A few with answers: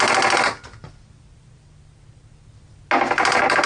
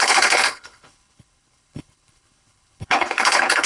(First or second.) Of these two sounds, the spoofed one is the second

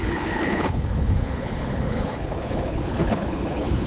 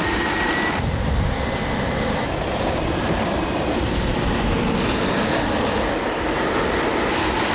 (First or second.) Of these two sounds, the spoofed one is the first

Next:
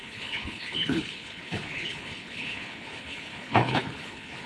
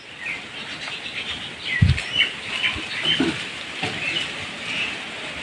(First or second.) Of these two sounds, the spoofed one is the first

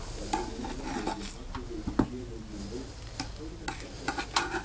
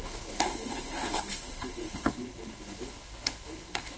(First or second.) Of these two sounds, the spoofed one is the second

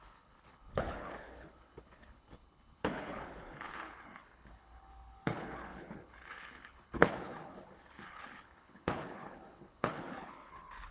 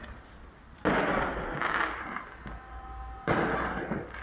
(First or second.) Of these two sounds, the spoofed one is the first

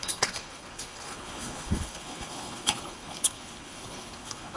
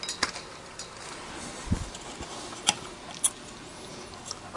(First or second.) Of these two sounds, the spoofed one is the first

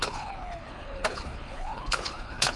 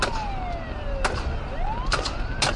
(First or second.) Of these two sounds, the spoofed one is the first